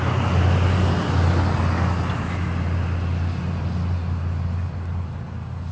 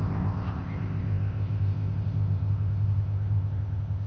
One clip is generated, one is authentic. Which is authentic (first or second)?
first